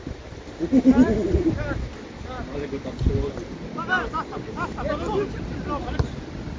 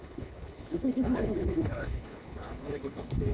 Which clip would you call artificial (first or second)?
second